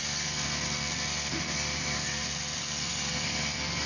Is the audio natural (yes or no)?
yes